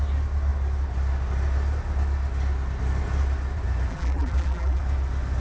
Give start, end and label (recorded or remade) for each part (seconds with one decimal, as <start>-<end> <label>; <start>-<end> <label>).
0.0-3.9 recorded; 3.9-4.8 remade; 4.8-5.4 recorded